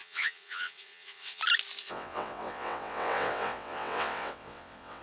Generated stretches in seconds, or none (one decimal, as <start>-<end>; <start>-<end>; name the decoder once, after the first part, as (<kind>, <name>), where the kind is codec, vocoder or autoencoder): 0.0-1.4 (vocoder, WaveNeXt); 1.8-5.0